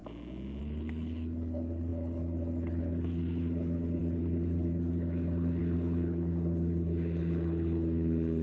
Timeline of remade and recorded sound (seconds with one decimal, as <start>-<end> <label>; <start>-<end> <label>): 0.0-0.6 recorded; 0.6-8.4 remade